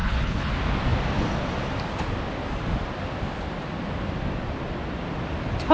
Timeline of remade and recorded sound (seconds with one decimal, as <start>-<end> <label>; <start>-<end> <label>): 0.0-0.5 remade; 0.5-5.7 recorded